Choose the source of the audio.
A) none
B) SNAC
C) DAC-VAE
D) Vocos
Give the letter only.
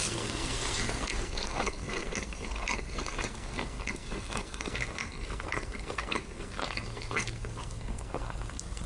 B